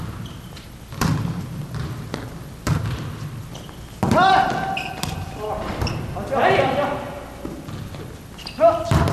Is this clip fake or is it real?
fake